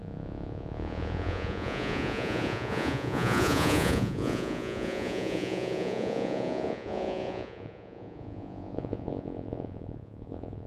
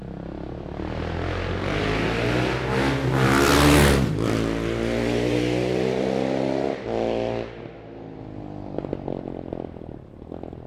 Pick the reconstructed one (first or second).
first